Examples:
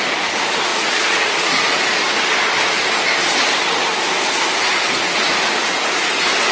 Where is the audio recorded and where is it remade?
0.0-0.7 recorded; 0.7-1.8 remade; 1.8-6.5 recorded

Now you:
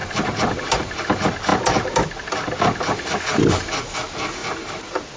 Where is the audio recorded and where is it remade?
0.0-1.0 remade; 1.0-4.4 recorded; 4.4-5.2 remade

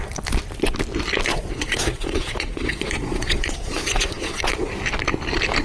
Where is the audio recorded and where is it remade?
0.0-1.3 recorded; 1.3-4.7 remade; 4.7-5.6 recorded

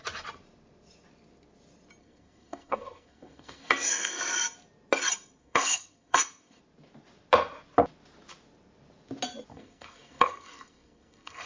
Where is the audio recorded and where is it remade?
0.0-2.0 recorded; 2.0-4.2 remade; 4.2-5.4 recorded; 5.4-6.6 remade; 6.6-9.5 recorded; 9.5-11.5 remade

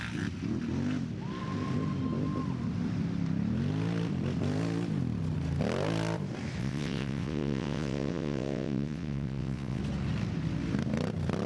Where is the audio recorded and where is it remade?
0.0-6.6 recorded; 6.6-9.8 remade; 9.8-11.5 recorded

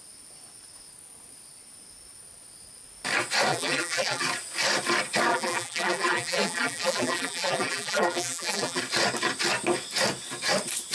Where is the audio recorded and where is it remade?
0.0-3.5 recorded; 3.5-4.2 remade; 4.2-5.3 recorded; 5.3-8.8 remade; 8.8-10.9 recorded

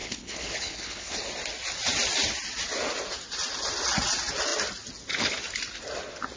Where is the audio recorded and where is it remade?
0.0-1.2 remade; 1.2-6.4 recorded

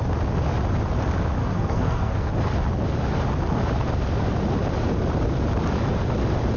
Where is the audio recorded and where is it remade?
0.0-1.4 recorded; 1.4-2.3 remade; 2.3-6.6 recorded